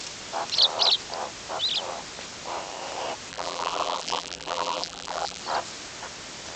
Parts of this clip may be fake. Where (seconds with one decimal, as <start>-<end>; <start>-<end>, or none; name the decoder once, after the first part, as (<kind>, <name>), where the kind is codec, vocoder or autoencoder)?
3.3-5.4 (vocoder, BigVGAN v2)